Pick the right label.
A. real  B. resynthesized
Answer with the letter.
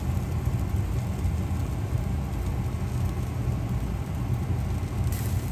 A